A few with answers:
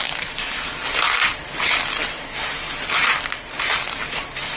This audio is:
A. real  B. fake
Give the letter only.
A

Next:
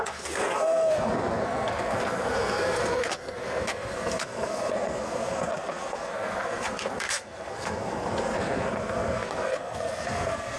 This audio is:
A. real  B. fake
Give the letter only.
B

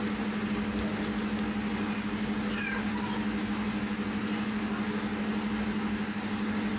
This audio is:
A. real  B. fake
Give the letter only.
A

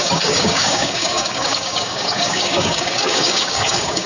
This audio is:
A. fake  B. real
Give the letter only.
A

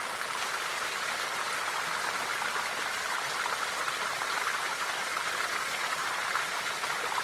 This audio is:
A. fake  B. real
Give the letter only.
A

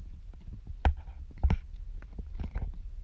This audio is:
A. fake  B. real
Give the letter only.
B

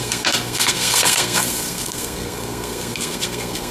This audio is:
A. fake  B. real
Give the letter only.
A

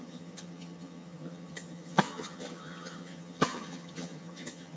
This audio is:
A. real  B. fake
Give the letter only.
B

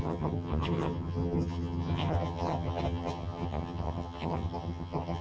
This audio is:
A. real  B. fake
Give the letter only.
B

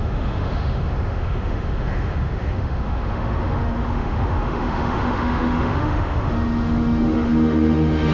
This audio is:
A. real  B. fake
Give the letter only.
B